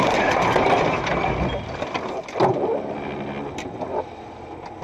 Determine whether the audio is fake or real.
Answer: real